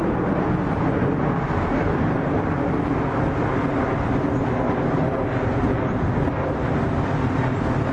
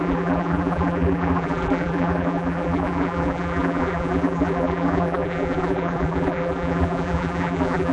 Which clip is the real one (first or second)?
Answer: first